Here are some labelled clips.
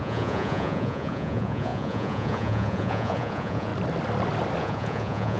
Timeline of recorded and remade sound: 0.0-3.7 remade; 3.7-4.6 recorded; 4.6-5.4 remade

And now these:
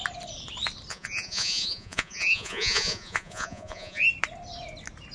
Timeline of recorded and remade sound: 0.0-0.9 recorded; 0.9-4.0 remade; 4.0-5.1 recorded

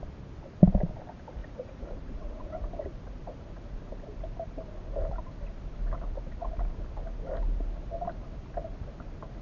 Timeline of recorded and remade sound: 0.0-1.4 recorded; 1.4-2.7 remade; 2.7-9.4 recorded

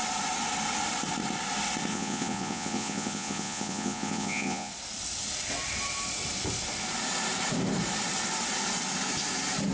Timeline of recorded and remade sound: 0.0-1.9 recorded; 1.9-4.7 remade; 4.7-9.7 recorded

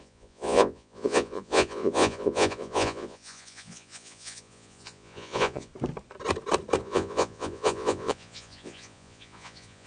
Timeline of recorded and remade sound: 0.0-5.7 remade; 5.7-6.8 recorded; 6.8-9.9 remade

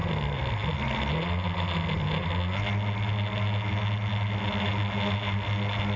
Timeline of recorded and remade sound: 0.0-6.0 recorded

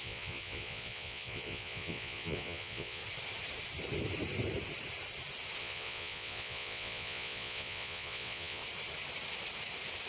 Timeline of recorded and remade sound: 0.0-3.0 remade; 3.0-5.6 recorded; 5.6-8.6 remade; 8.6-10.1 recorded

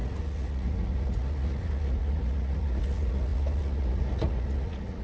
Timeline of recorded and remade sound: 0.0-5.0 remade